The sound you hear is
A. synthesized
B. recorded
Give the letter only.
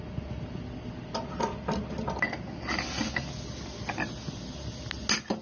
B